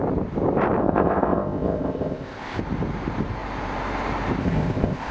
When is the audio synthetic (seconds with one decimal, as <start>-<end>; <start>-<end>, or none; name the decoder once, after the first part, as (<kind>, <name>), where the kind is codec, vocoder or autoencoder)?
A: 0.8-2.6 (codec, ZipCodec); 4.4-5.1